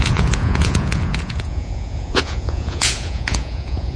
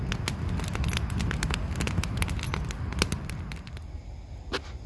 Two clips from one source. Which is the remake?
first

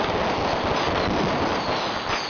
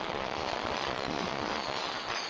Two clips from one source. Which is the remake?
second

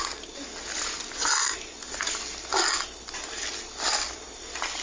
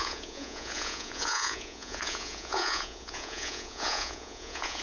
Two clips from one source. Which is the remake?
second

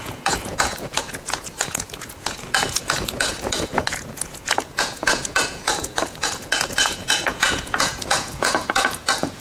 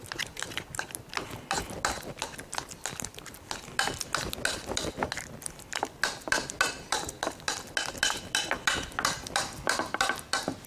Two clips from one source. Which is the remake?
first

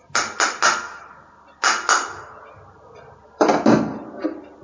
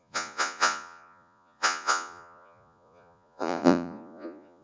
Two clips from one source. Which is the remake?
second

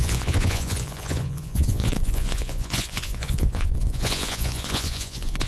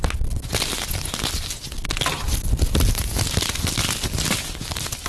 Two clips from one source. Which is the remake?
first